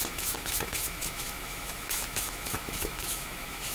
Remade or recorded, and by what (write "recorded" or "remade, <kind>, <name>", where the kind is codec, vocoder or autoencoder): remade, autoencoder, DAC-VAE